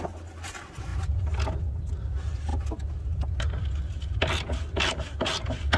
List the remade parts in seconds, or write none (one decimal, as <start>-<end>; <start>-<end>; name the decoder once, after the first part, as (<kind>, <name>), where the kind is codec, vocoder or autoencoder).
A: none

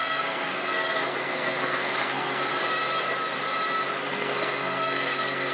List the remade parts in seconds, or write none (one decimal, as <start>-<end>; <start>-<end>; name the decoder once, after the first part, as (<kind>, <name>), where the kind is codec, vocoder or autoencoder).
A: 0.0-2.5 (codec, SNAC); 4.1-5.5

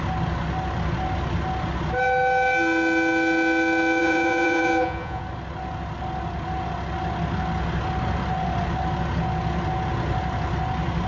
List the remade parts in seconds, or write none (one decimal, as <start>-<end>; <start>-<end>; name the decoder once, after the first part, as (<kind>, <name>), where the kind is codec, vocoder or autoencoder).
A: 4.0-5.2 (vocoder, Vocos)

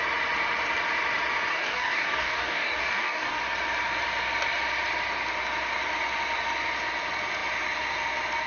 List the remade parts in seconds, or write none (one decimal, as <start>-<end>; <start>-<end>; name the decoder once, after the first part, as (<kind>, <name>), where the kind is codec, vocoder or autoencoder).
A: 1.5-3.4 (codec, DAC)

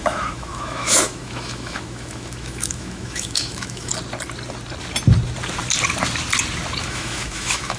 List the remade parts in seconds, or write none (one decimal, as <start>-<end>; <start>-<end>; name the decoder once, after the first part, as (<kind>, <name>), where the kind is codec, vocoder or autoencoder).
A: 0.0-3.9 (autoencoder, DAC-VAE); 6.8-7.8